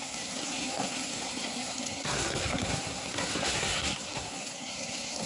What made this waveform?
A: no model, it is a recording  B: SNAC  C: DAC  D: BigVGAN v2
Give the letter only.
B